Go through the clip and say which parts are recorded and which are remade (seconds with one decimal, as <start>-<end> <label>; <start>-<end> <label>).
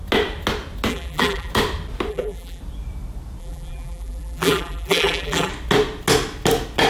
0.0-0.9 recorded; 0.9-1.5 remade; 1.5-2.1 recorded; 2.1-2.6 remade; 2.6-3.4 recorded; 3.4-5.5 remade; 5.5-6.9 recorded